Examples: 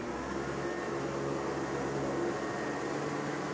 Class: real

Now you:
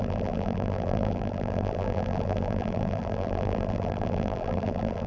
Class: fake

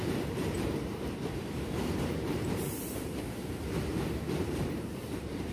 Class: fake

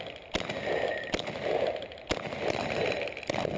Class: real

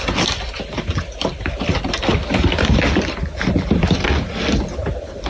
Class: fake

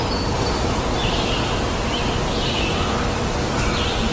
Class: real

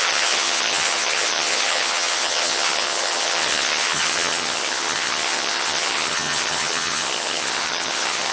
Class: fake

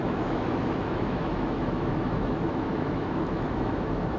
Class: fake